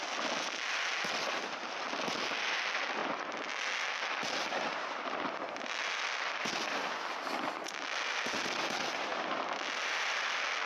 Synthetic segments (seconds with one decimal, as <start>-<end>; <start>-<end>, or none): none